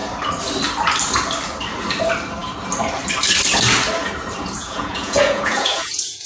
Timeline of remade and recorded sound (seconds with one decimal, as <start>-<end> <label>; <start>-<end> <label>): 0.0-4.6 recorded; 4.6-6.3 remade